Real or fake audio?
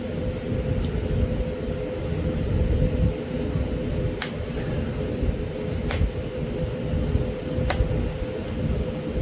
real